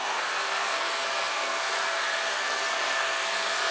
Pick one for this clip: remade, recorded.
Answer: remade